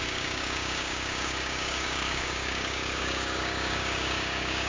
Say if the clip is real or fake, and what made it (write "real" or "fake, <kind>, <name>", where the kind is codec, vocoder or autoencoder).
fake, codec, DAC